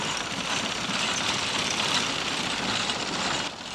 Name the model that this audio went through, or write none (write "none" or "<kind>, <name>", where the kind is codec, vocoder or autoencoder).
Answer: vocoder, BigVGAN v2